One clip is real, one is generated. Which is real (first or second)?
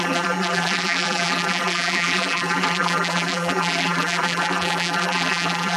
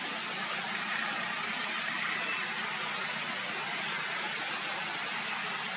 second